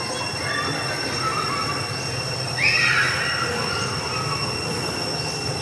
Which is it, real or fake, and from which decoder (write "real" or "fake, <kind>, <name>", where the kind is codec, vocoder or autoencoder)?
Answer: real